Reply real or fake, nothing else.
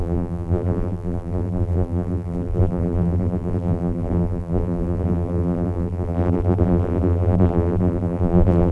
fake